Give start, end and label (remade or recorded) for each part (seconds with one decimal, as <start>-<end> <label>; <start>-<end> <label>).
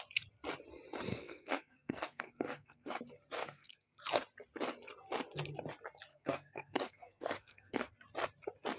0.0-1.1 recorded; 1.1-3.0 remade; 3.0-3.4 recorded; 3.4-4.0 remade; 4.0-6.1 recorded; 6.1-7.9 remade; 7.9-8.8 recorded